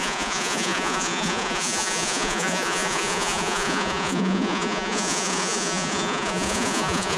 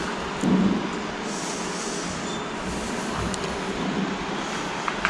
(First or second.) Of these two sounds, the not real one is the first